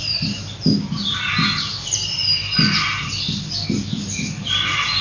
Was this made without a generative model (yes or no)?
yes